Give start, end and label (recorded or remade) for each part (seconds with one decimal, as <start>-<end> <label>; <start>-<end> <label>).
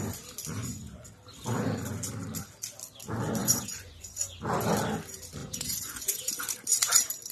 0.0-0.6 recorded; 0.6-1.1 remade; 1.1-3.4 recorded; 3.4-4.4 remade; 4.4-5.4 recorded; 5.4-6.3 remade; 6.3-7.3 recorded